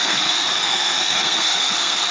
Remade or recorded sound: remade